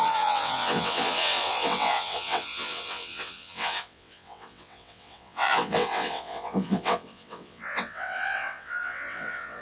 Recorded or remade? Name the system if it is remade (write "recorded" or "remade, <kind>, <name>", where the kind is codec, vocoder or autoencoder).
remade, vocoder, WaveNeXt